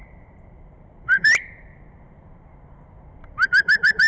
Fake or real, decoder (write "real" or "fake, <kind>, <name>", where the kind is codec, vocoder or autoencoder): fake, vocoder, BigVGAN v2